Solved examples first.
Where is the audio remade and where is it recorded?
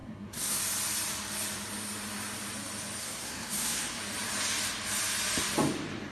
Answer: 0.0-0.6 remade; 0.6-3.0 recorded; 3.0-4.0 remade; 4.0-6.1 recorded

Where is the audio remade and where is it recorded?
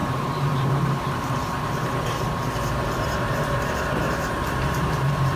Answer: 0.0-5.4 remade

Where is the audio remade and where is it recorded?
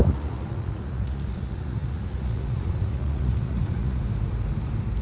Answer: 0.0-4.0 remade; 4.0-5.0 recorded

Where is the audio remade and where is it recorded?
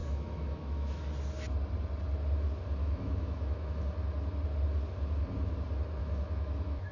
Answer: 0.0-1.0 remade; 1.0-2.8 recorded; 2.8-3.8 remade; 3.8-6.0 recorded; 6.0-6.9 remade